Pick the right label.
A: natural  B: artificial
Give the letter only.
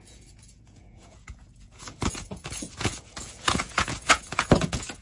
B